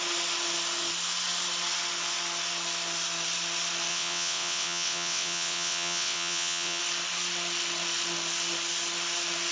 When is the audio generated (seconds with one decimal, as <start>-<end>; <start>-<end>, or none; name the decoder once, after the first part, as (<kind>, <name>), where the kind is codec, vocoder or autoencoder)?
3.9-6.8 (vocoder, WaveNeXt)